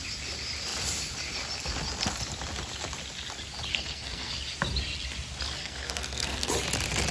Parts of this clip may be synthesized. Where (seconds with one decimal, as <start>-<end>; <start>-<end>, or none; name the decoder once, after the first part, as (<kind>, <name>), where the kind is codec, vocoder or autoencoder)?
3.7-4.3 (codec, SNAC); 5.6-6.5